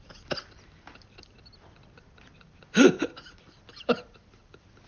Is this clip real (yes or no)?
yes